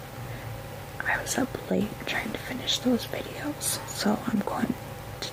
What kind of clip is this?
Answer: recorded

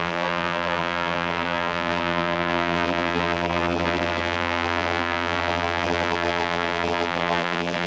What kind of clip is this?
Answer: remade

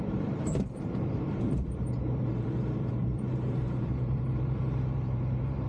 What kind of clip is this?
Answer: remade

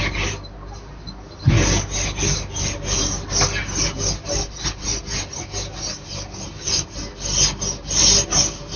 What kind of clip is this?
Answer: recorded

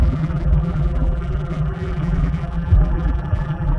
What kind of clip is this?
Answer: remade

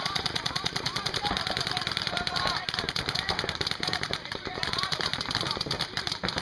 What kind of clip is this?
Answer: remade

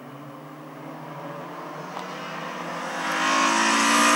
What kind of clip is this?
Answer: recorded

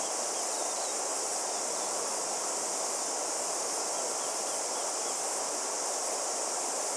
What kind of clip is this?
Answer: recorded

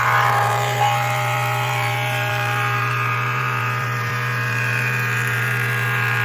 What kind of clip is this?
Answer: remade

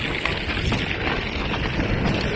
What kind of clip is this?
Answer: recorded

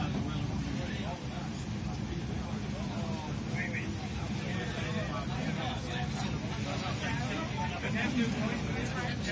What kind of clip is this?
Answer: recorded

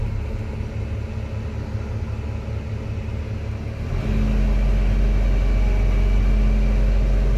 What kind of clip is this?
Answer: recorded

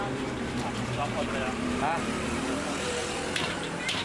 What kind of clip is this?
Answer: remade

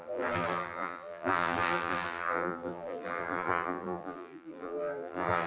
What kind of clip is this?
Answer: remade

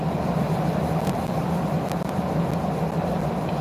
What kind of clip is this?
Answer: recorded